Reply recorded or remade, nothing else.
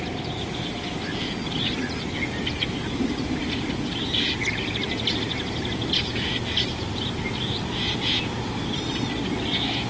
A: recorded